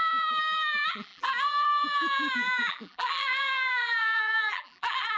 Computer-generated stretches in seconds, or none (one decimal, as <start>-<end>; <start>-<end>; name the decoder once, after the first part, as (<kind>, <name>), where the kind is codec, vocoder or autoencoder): 0.0-5.2 (vocoder, BigVGAN v2)